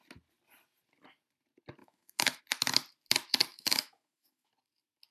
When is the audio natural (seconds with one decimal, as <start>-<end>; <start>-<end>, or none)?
0.0-1.8; 2.4-3.5; 4.5-5.1